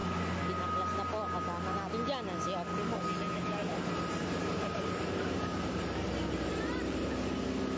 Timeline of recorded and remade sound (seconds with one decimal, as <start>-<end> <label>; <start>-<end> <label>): 0.0-3.6 recorded; 3.6-7.1 remade; 7.1-7.8 recorded